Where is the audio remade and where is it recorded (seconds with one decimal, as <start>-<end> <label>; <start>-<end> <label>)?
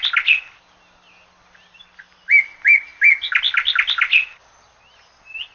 0.0-5.5 recorded